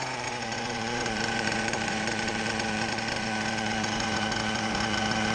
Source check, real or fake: fake